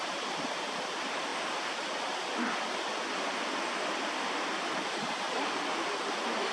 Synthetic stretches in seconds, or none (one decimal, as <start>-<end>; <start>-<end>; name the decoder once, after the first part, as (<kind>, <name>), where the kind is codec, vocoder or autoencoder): none